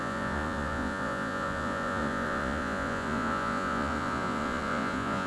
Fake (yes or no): yes